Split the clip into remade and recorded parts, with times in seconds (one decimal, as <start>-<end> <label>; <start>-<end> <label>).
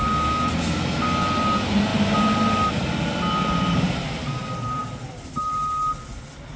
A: 0.0-6.6 recorded